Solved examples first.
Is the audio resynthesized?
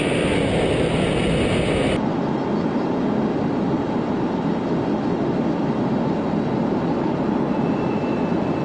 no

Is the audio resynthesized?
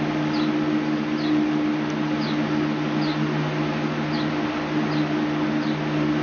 no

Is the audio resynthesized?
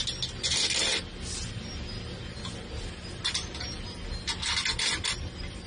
no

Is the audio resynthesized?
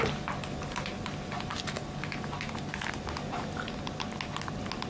no